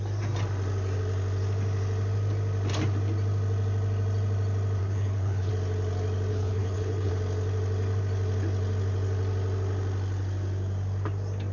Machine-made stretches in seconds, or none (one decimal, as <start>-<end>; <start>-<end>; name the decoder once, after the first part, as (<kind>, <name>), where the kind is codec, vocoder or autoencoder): 4.8-5.5 (codec, HILCodec); 6.3-7.1